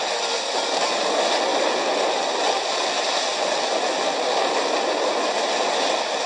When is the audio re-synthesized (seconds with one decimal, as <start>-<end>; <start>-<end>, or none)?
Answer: none